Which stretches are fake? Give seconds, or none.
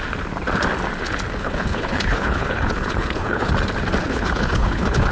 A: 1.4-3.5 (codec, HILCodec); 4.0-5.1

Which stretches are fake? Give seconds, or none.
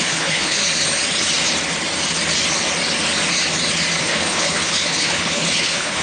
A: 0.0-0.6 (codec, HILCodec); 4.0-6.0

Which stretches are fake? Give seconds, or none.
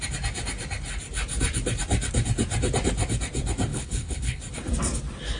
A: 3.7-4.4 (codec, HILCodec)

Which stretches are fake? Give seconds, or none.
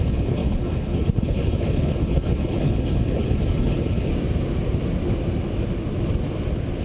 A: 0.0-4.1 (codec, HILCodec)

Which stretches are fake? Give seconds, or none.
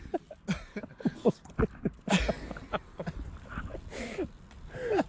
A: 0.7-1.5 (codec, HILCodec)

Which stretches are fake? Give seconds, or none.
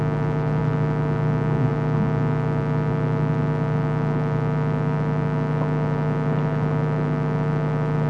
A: none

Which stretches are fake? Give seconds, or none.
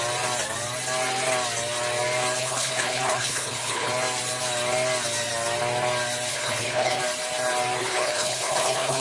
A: 2.4-3.9 (codec, HILCodec); 6.3-7.0; 7.8-9.0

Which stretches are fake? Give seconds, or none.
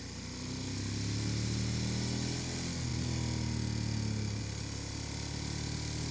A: none